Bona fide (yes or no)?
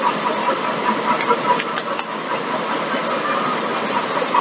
yes